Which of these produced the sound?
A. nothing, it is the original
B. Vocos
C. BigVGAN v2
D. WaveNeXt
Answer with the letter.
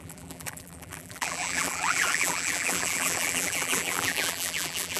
C